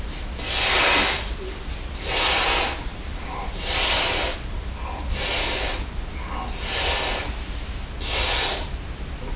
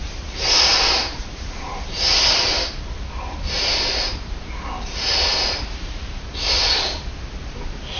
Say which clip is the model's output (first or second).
second